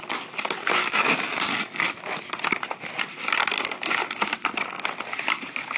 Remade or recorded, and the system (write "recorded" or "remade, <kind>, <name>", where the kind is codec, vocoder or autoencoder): remade, vocoder, BigVGAN v2